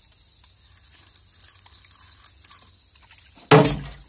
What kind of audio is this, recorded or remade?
recorded